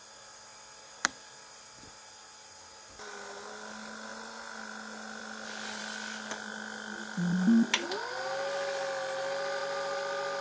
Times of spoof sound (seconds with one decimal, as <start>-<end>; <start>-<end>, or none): none

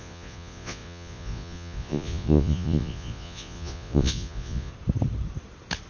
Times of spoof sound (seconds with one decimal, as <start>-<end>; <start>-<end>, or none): 0.0-4.7

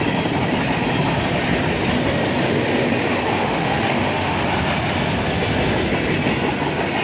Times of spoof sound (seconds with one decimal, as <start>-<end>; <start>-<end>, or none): 3.4-4.4

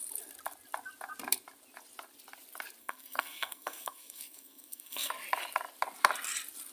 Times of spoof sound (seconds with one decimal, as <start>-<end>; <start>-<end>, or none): 2.8-5.1

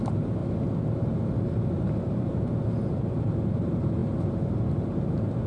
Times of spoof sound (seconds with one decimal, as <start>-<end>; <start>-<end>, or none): 0.0-0.4; 1.0-5.5